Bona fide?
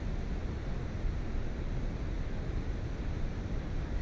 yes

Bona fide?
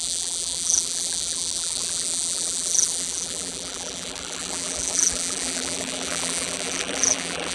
no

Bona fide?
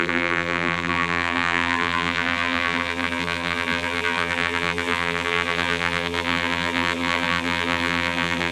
no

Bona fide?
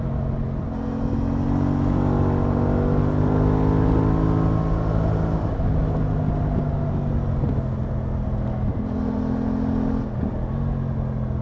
yes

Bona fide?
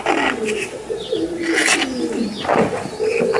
yes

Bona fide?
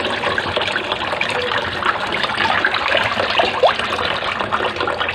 yes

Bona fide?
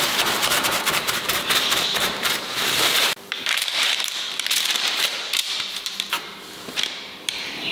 no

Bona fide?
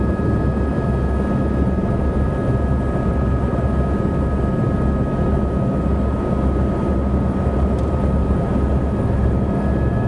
yes